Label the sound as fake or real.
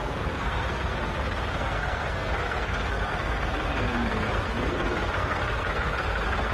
fake